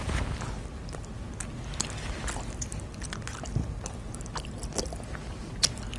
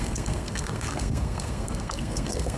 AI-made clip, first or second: second